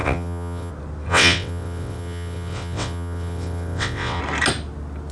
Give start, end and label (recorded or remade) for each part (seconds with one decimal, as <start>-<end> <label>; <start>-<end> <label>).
0.0-0.7 remade; 0.7-1.1 recorded; 1.1-4.2 remade; 4.2-5.1 recorded

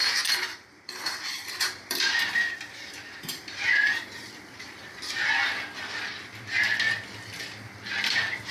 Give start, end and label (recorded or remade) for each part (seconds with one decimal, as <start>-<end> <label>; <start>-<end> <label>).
0.0-5.0 remade; 5.0-8.5 recorded

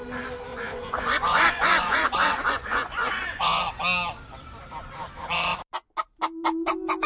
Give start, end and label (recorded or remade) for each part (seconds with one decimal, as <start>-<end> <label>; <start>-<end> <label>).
0.0-0.5 recorded; 0.5-3.6 remade; 3.6-7.1 recorded

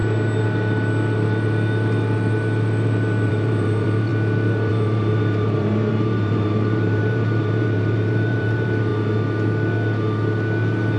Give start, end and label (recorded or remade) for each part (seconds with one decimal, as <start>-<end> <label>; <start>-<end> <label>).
0.0-3.3 recorded; 3.3-4.1 remade; 4.1-4.7 recorded; 4.7-8.9 remade; 8.9-11.0 recorded